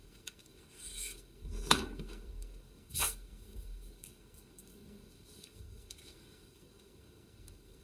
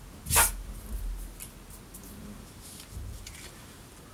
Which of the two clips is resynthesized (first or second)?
first